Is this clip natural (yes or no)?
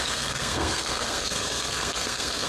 no